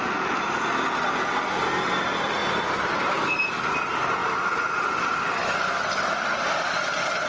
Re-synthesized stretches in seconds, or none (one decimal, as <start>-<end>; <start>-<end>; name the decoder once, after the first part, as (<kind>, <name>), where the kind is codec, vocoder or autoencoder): none